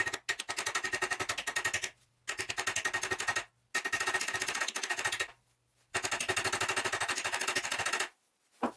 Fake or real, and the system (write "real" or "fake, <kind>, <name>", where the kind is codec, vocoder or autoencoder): real